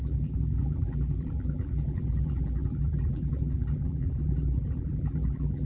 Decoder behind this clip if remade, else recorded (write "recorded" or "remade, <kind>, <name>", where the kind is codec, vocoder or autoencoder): remade, vocoder, BigVGAN v2